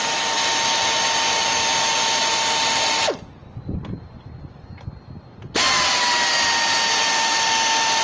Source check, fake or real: real